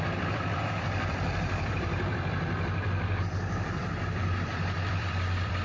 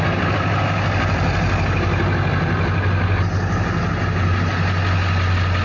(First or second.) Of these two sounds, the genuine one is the second